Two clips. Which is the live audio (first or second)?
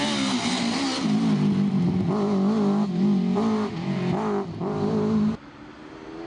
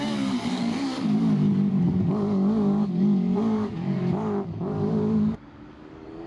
first